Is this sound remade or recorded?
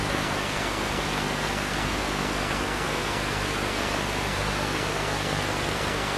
remade